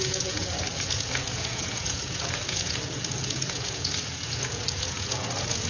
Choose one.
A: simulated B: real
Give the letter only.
A